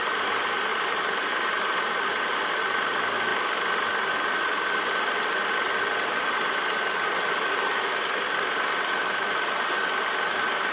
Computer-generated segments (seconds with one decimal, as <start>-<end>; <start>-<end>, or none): 0.7-1.3